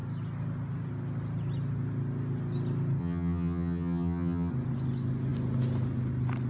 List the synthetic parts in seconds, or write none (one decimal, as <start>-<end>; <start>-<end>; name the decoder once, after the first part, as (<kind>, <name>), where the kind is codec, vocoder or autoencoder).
3.0-4.5 (vocoder, HiFi-GAN)